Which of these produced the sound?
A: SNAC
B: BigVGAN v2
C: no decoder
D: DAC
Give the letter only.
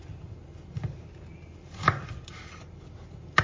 C